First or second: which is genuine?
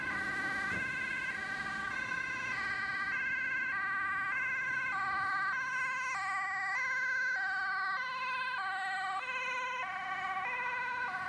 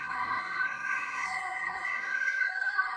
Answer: first